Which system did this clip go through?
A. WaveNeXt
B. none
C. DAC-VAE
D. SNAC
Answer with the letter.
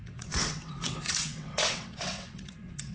A